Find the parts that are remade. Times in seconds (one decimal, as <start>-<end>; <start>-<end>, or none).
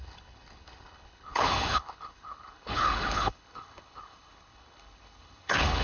0.0-5.8